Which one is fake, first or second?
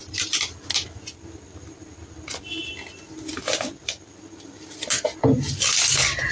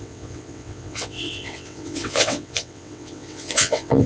second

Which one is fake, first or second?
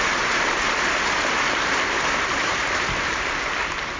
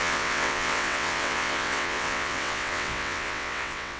second